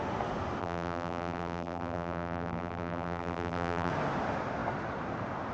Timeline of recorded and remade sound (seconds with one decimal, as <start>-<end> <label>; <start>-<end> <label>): 0.0-0.6 recorded; 0.6-3.9 remade; 3.9-5.5 recorded